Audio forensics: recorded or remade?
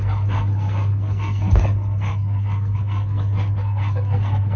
remade